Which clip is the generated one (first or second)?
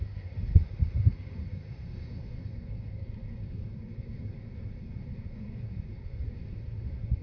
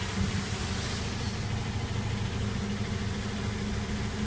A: first